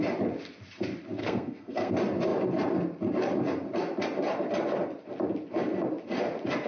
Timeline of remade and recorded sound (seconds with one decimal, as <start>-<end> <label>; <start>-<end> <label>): 0.0-1.2 recorded; 1.2-1.9 remade; 1.9-6.7 recorded